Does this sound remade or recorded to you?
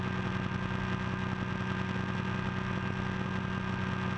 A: recorded